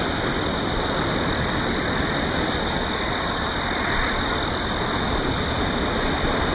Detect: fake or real real